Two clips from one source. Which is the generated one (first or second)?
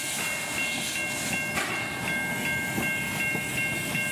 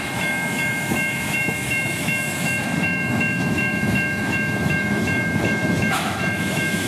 second